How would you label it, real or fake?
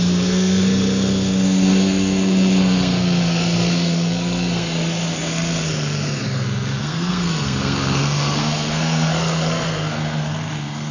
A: fake